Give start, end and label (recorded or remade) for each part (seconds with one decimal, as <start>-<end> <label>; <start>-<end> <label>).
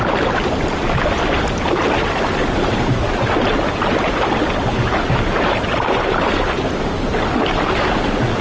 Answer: 0.0-2.4 recorded; 2.4-3.3 remade; 3.3-4.7 recorded; 4.7-7.1 remade; 7.1-8.4 recorded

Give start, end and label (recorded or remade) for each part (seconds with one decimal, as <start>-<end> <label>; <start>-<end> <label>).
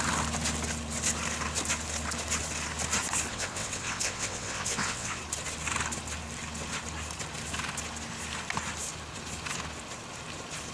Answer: 0.0-3.3 recorded; 3.3-5.2 remade; 5.2-10.7 recorded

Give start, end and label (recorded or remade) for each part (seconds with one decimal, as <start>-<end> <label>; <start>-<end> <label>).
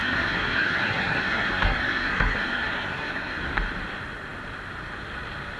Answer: 0.0-3.4 remade; 3.4-5.6 recorded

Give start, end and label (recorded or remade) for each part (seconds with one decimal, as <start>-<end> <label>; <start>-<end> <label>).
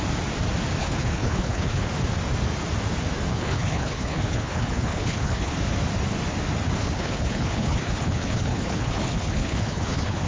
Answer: 0.0-0.8 recorded; 0.8-1.9 remade; 1.9-3.3 recorded; 3.3-5.6 remade; 5.6-6.8 recorded; 6.8-10.3 remade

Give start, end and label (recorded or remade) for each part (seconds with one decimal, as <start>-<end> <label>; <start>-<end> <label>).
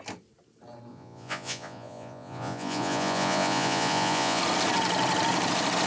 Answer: 0.0-0.9 recorded; 0.9-4.4 remade; 4.4-5.9 recorded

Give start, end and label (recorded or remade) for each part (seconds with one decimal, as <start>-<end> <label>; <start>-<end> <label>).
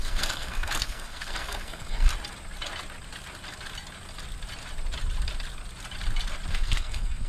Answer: 0.0-2.1 remade; 2.1-6.5 recorded; 6.5-7.3 remade